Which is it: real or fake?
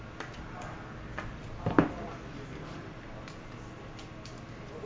real